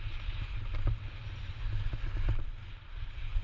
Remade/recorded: recorded